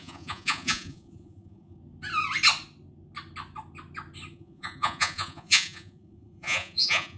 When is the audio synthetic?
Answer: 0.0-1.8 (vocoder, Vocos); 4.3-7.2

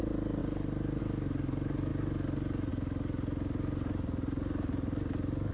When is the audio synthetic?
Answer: none

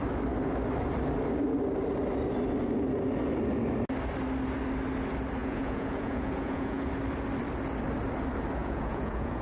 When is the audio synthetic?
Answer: 5.4-6.9 (vocoder, Vocos); 8.6-9.4